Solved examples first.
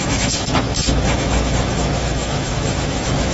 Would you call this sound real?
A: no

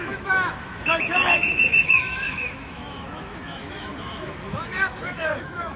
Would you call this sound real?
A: no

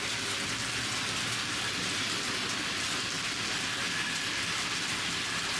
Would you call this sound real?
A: yes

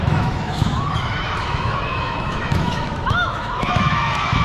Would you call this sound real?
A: no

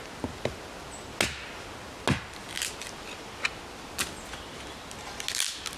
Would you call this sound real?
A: yes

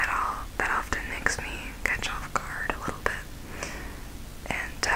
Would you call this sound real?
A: yes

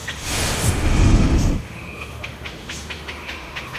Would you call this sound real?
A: no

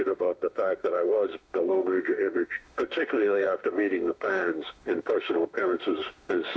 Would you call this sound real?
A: no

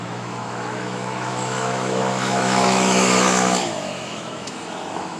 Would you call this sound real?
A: no